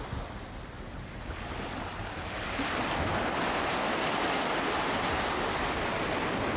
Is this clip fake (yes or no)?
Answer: no